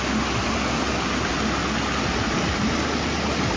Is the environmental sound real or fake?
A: real